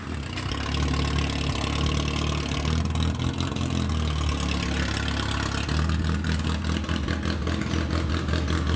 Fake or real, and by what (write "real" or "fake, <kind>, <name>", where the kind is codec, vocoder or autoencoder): real